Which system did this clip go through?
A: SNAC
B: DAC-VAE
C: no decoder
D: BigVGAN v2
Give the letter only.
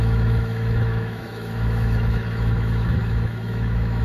B